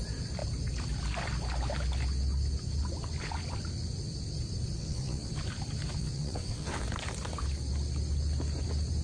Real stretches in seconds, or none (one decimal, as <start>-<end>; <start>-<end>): 0.0-4.8; 5.3-6.0; 6.8-9.0